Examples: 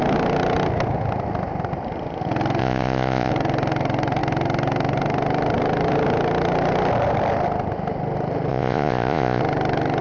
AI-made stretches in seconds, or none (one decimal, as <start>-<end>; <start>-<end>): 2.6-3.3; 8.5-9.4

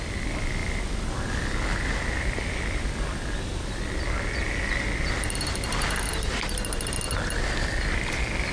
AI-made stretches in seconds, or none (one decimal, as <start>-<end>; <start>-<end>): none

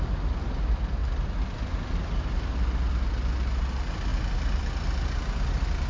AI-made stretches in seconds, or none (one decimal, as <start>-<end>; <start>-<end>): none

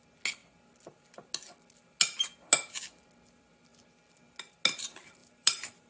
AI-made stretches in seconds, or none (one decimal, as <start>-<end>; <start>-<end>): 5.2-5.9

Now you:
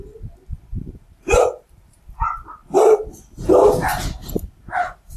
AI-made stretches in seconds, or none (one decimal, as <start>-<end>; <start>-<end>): 0.7-2.2; 2.6-5.2